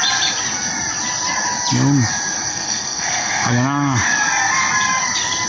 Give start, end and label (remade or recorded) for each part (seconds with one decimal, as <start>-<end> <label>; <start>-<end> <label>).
0.0-2.5 recorded; 2.5-3.5 remade; 3.5-5.5 recorded